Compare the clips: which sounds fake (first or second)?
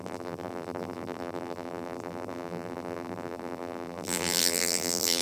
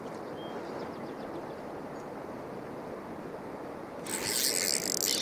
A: first